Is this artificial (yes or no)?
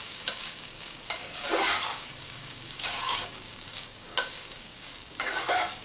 yes